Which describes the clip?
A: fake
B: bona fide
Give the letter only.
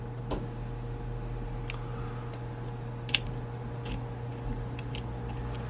B